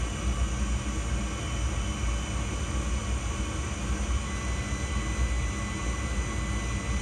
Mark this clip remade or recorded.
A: recorded